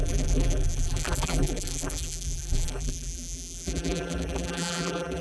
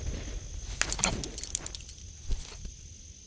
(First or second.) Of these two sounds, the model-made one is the first